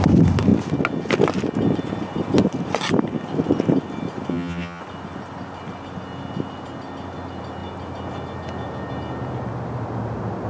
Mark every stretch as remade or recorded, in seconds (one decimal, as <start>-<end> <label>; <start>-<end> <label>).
0.0-4.3 recorded; 4.3-4.8 remade; 4.8-10.5 recorded